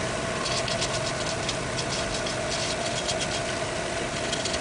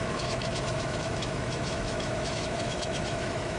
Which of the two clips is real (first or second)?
first